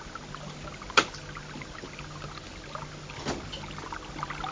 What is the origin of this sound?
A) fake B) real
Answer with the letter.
B